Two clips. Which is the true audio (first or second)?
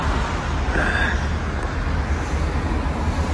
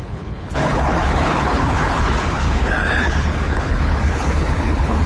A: first